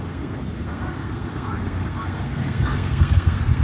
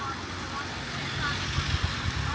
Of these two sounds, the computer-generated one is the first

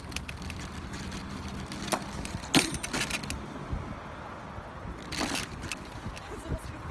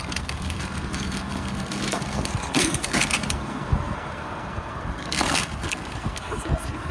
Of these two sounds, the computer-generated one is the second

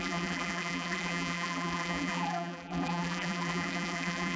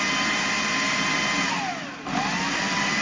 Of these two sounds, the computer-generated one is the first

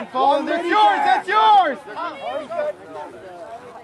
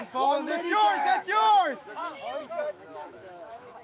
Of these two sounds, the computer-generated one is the second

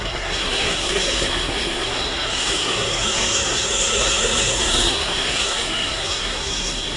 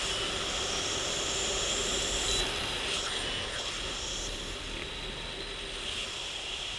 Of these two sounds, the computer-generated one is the first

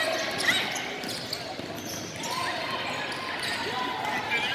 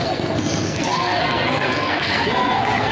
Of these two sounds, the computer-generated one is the second